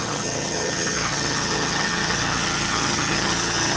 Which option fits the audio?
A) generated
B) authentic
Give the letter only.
A